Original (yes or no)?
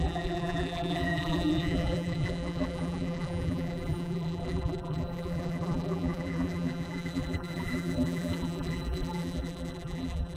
no